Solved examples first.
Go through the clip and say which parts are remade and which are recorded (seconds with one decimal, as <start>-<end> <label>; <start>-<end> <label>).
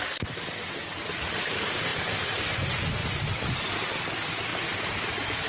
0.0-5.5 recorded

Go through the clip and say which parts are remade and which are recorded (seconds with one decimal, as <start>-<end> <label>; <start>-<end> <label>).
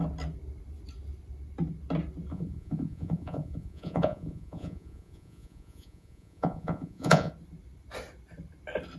0.0-2.3 recorded; 2.3-7.3 remade; 7.3-9.0 recorded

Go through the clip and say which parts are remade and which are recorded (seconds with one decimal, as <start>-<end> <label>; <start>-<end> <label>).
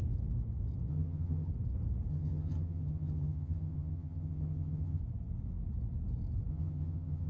0.0-0.9 recorded; 0.9-1.5 remade; 1.5-2.1 recorded; 2.1-5.0 remade; 5.0-6.5 recorded; 6.5-7.3 remade